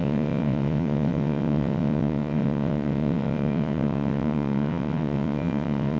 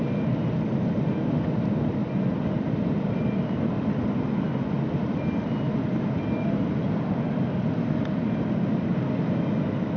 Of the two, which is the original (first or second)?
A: second